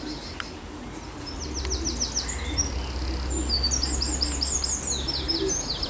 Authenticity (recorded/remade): recorded